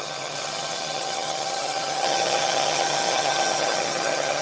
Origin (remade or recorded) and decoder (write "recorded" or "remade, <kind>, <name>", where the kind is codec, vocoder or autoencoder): remade, vocoder, HiFi-GAN